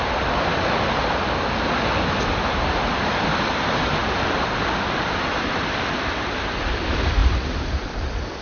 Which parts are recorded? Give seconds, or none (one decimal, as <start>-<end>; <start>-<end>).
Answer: 0.5-2.8